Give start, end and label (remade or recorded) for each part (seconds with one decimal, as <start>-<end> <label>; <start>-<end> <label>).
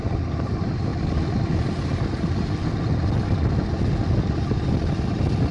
0.0-0.9 remade; 0.9-4.2 recorded; 4.2-5.5 remade